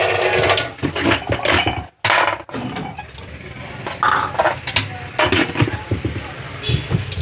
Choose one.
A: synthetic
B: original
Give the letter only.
B